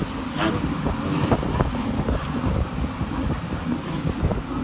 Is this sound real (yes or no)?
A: no